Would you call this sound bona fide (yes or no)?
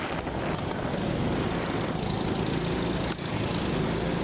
yes